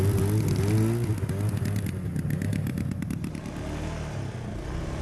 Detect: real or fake real